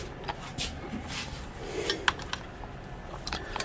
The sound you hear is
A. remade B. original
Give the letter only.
B